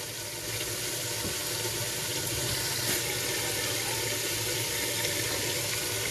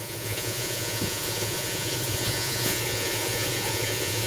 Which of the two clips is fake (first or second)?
second